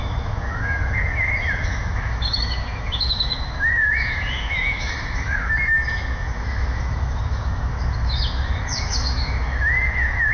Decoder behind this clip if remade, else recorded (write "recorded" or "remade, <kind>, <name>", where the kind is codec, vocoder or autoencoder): remade, autoencoder, DAC-VAE